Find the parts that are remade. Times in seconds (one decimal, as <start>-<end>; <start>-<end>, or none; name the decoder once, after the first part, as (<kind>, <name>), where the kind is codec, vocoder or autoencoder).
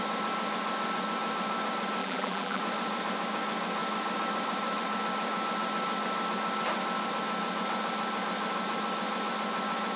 2.0-2.6 (vocoder, BigVGAN v2)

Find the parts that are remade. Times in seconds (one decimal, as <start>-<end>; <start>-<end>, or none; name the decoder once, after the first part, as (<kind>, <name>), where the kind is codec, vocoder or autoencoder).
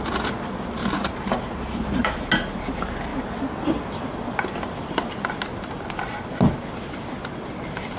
0.8-2.3 (vocoder, BigVGAN v2)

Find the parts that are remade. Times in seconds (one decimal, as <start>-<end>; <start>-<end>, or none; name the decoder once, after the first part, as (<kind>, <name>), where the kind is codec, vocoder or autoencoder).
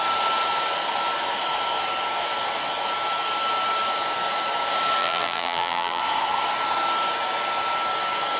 5.0-6.0 (vocoder, BigVGAN v2)